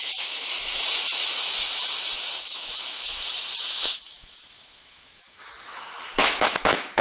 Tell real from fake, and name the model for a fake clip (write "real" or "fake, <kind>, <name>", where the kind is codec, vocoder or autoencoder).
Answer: fake, autoencoder, DAC-VAE